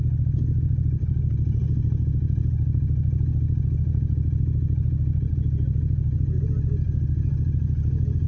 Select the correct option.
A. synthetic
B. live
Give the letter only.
B